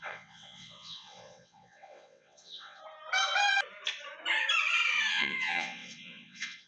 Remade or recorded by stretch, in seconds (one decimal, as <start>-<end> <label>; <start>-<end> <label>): 0.0-2.8 remade; 2.8-5.1 recorded; 5.1-6.7 remade